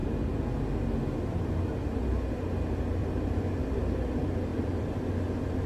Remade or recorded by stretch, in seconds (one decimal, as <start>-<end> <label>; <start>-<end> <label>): 0.0-3.0 recorded; 3.0-3.8 remade; 3.8-4.5 recorded; 4.5-5.1 remade; 5.1-5.7 recorded